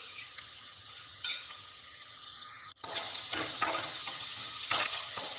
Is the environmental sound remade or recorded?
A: remade